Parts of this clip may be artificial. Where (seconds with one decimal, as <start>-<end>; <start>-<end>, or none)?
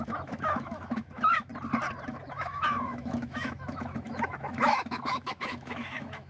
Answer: 0.0-1.5; 2.1-6.3